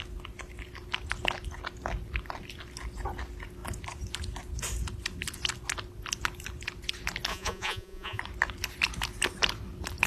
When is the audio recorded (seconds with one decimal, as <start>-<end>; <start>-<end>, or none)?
0.0-7.3; 8.2-10.1